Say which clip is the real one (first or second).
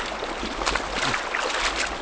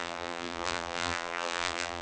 first